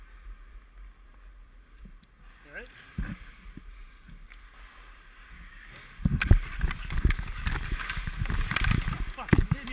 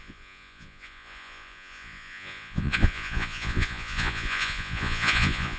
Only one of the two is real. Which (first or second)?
first